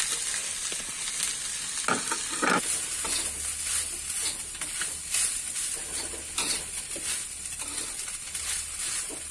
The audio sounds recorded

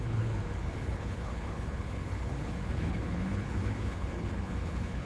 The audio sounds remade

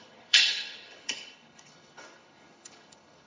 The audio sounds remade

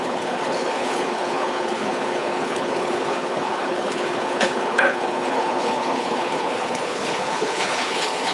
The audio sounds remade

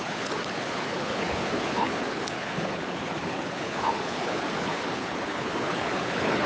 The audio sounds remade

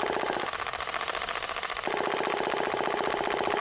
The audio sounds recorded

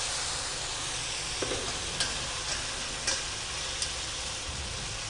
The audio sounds recorded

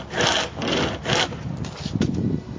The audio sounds recorded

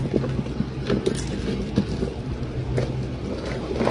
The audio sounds recorded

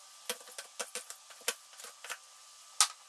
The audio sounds recorded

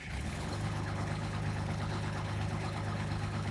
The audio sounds remade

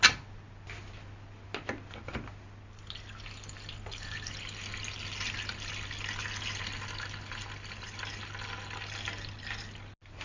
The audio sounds recorded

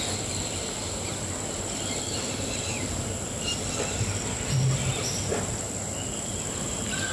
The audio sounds recorded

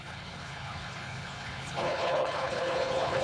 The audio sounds remade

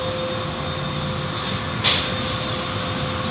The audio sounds recorded